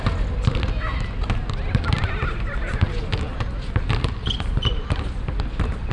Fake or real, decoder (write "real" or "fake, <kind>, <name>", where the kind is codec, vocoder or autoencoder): real